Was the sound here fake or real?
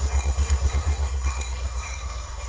fake